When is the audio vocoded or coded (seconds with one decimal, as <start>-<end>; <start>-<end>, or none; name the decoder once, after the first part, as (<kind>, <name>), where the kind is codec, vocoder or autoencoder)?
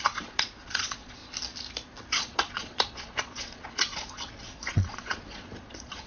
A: 0.0-1.2 (vocoder, Vocos); 2.1-6.1